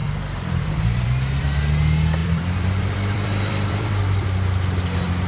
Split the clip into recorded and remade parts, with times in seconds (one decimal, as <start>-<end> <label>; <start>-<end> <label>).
0.0-5.3 remade